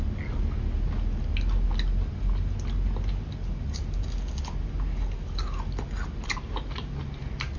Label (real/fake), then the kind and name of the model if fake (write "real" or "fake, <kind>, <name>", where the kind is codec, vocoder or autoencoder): real